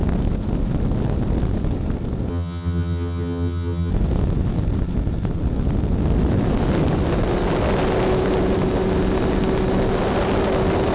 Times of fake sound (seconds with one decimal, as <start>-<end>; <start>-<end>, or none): 2.3-3.9

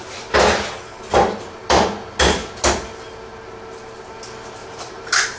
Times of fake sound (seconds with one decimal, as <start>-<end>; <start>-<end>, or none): 1.1-1.6; 4.6-5.4

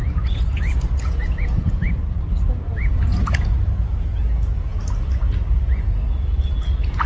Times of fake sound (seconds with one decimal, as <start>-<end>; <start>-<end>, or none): 0.0-1.9; 2.7-3.6

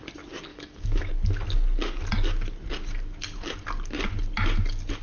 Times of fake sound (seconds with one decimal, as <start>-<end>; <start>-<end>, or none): 0.5-1.1

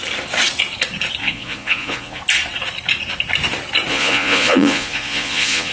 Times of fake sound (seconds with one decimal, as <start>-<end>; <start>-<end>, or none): 1.2-2.2; 3.9-5.7

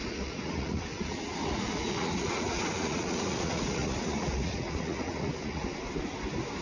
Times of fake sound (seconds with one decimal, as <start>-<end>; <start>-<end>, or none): 0.0-5.7

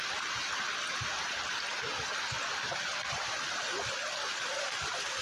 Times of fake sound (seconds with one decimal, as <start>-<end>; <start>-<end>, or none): none